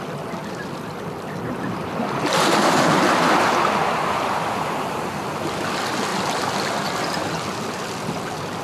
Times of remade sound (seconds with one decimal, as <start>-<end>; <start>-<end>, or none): none